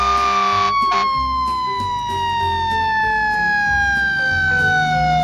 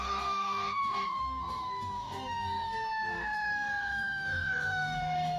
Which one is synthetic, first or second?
second